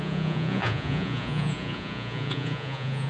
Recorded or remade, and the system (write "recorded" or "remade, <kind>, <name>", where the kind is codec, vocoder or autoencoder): remade, vocoder, Vocos